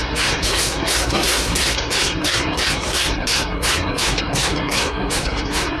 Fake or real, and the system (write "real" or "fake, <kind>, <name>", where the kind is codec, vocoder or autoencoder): fake, codec, SNAC